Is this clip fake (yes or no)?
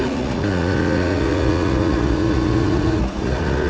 yes